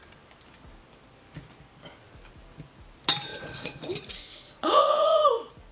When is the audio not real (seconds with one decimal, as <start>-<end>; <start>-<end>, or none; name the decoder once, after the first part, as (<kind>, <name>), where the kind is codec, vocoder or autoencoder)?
3.3-3.8 (vocoder, Vocos); 4.3-5.2